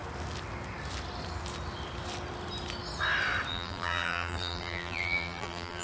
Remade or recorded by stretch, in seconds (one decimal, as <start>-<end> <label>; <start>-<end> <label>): 0.0-3.5 recorded; 3.5-5.8 remade